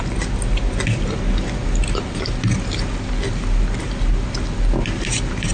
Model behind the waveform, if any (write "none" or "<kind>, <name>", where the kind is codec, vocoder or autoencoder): none